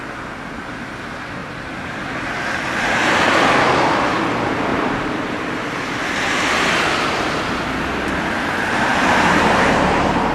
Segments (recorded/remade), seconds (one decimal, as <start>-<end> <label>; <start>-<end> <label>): 0.0-1.4 recorded; 1.4-2.0 remade; 2.0-4.7 recorded; 4.7-5.4 remade; 5.4-8.9 recorded; 8.9-10.3 remade